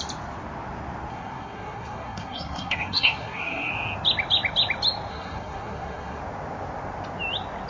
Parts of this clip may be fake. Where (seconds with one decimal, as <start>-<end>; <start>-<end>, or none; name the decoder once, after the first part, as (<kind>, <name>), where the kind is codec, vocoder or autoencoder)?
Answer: 1.1-3.7 (codec, SNAC); 5.1-6.2